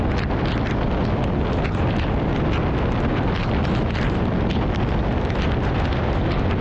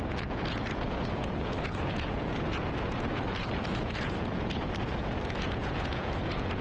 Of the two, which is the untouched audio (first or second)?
first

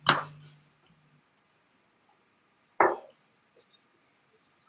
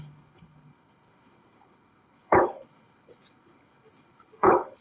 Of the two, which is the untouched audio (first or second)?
first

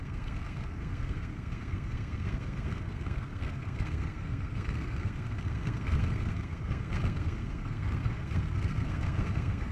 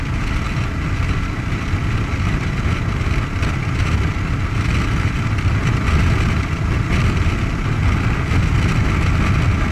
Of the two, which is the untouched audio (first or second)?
second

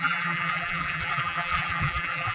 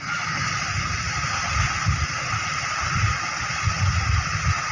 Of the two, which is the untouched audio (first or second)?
second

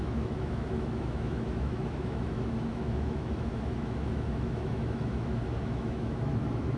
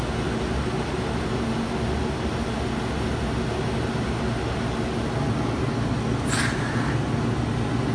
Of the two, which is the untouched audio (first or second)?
second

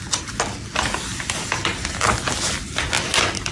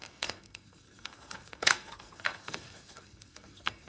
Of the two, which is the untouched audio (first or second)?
first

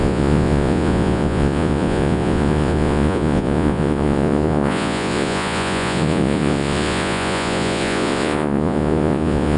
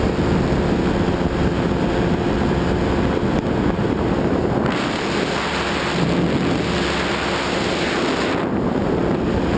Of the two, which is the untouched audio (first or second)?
second